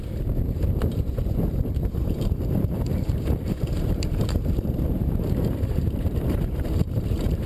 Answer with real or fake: fake